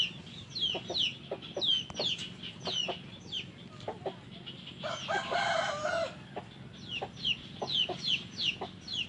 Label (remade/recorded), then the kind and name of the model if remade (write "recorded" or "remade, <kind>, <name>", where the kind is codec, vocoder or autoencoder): recorded